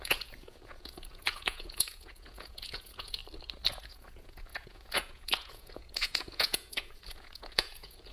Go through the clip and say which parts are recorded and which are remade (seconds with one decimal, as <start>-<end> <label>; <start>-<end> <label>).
0.0-3.2 remade; 3.2-3.7 recorded; 3.7-8.1 remade